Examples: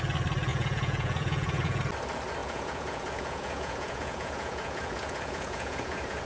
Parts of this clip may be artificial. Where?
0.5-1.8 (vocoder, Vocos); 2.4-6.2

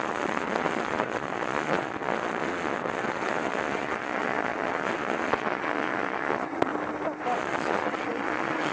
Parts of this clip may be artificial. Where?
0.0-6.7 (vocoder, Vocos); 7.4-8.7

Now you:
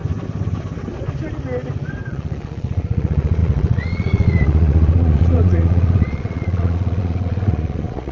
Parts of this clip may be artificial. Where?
2.1-8.1 (vocoder, Vocos)